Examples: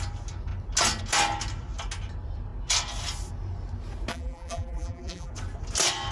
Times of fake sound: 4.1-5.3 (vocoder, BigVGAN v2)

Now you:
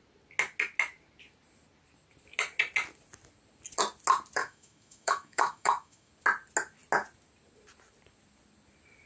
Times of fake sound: 4.4-6.1 (autoencoder, DAC-VAE)